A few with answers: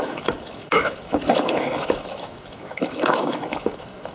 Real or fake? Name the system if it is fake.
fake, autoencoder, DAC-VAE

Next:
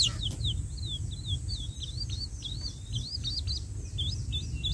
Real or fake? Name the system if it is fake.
real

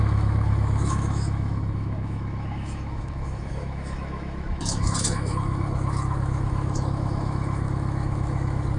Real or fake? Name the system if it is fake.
fake, autoencoder, DAC-VAE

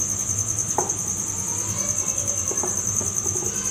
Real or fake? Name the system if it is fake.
real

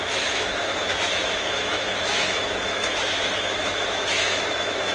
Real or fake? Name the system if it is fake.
fake, autoencoder, DAC-VAE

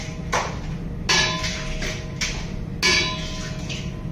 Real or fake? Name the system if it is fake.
real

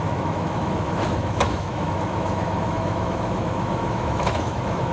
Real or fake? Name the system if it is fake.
fake, autoencoder, DAC-VAE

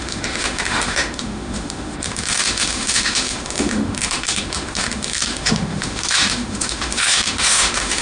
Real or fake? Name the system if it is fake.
fake, autoencoder, DAC-VAE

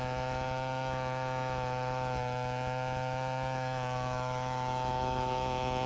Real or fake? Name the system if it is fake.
fake, autoencoder, DAC-VAE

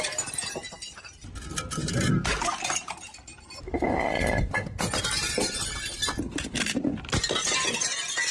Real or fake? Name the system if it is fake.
real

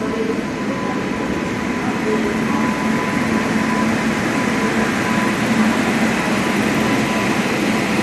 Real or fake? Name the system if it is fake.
real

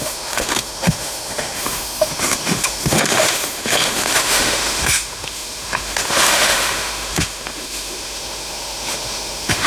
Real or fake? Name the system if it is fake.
fake, autoencoder, DAC-VAE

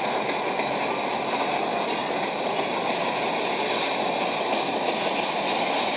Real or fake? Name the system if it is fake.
real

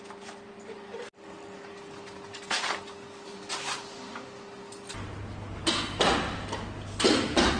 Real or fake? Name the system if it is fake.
real